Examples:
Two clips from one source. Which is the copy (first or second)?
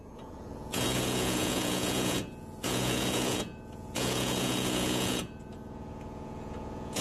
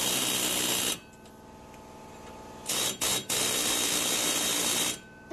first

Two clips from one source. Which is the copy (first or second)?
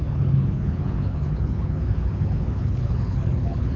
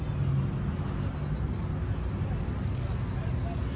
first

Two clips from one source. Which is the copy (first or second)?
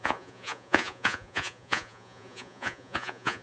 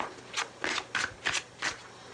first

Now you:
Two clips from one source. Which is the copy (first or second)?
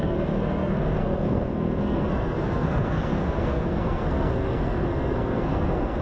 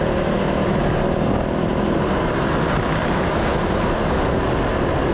first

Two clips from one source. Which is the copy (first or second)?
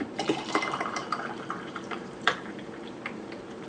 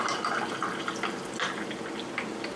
first